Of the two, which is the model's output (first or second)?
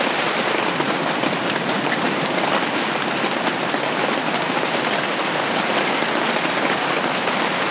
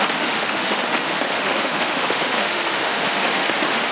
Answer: second